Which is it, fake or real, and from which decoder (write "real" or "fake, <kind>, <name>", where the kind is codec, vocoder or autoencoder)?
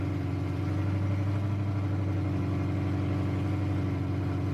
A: real